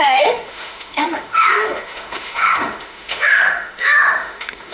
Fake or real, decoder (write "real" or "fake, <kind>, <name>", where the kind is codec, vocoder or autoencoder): fake, autoencoder, DAC-VAE